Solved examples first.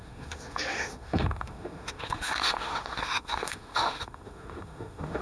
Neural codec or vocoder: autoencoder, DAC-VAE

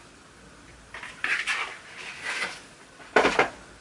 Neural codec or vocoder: none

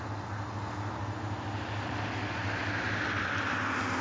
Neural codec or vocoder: none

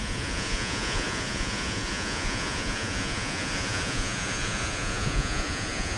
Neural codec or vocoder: vocoder, Vocos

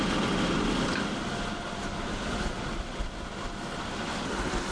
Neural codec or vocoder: none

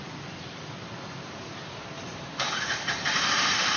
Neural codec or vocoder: vocoder, BigVGAN v2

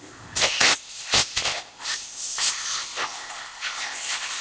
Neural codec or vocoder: codec, ZipCodec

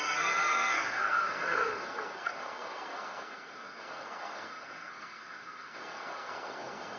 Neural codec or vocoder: codec, SNAC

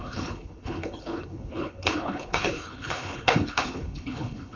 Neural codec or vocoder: codec, HILCodec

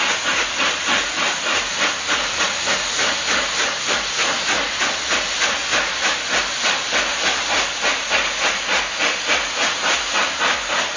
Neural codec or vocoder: none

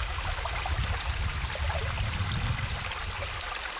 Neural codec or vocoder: none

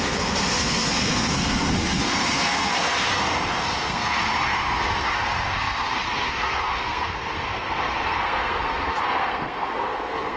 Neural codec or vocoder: codec, SNAC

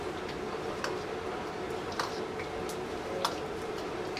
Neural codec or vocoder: none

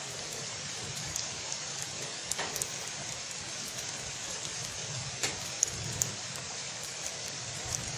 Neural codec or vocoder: codec, DAC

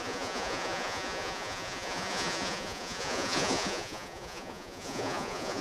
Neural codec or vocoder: vocoder, Vocos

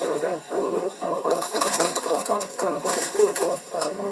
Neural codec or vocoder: codec, SNAC